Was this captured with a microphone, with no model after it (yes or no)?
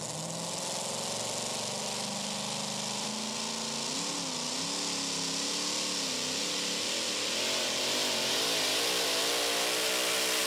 yes